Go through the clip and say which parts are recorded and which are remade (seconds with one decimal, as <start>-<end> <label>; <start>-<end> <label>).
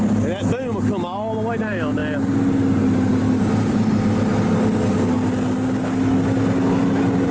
0.0-7.3 recorded